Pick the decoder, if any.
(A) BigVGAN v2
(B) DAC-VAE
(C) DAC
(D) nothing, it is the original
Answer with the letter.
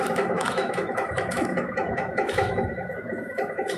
B